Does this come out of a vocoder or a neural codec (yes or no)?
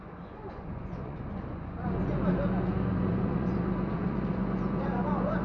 yes